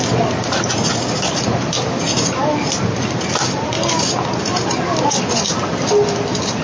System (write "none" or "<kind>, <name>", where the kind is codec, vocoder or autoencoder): none